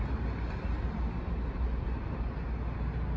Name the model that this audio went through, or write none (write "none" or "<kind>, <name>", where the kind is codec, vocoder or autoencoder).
none